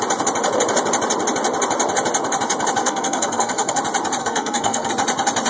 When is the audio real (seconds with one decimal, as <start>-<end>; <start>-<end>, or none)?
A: 0.0-2.8; 3.8-4.2; 4.9-5.5

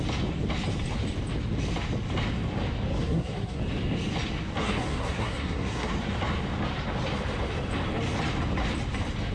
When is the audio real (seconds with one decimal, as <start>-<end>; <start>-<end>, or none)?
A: 0.0-3.0; 3.6-4.6; 5.9-9.3

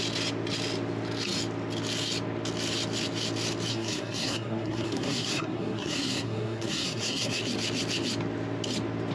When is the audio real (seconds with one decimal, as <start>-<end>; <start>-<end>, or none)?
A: 0.0-3.7; 7.4-9.1

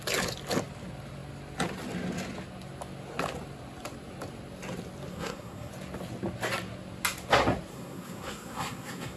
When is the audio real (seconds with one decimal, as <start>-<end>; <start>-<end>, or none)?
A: 0.0-5.1; 5.7-7.7

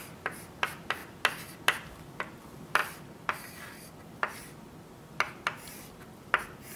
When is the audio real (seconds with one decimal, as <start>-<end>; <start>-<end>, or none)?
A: 0.0-6.8

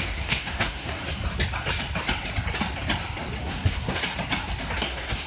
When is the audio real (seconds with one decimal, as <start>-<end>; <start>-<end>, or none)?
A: 1.0-3.4; 4.0-4.8

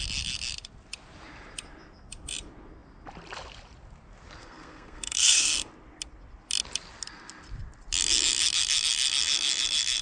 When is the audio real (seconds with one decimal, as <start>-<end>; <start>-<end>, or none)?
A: 0.0-4.4; 5.7-10.0